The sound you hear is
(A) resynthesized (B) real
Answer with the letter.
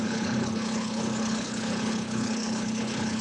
A